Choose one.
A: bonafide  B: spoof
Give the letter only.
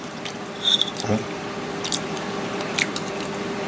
B